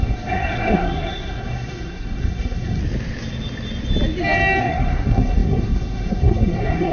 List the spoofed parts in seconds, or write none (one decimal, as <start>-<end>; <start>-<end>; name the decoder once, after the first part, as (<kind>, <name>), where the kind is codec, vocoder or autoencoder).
0.0-2.8 (codec, SNAC); 4.6-6.9